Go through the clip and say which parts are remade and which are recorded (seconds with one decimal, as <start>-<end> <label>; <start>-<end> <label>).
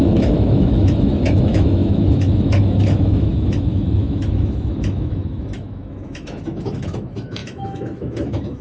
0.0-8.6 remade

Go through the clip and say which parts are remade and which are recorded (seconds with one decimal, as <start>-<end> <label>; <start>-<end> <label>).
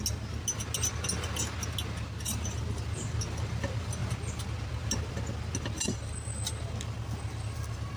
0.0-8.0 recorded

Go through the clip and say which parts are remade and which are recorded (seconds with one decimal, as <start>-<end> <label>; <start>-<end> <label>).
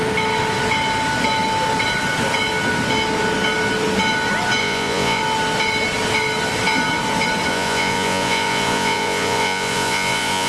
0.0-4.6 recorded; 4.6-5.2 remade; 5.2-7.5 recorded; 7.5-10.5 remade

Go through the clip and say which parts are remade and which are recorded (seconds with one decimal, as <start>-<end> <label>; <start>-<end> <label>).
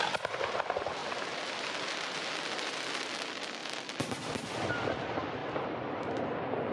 0.0-5.4 remade; 5.4-6.2 recorded; 6.2-6.7 remade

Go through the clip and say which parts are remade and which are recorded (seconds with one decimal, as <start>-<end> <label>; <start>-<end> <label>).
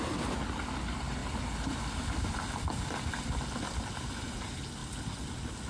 0.0-1.2 remade; 1.2-4.1 recorded; 4.1-4.8 remade; 4.8-5.7 recorded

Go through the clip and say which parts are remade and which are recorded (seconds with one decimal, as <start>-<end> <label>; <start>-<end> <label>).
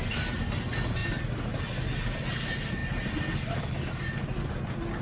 0.0-5.0 recorded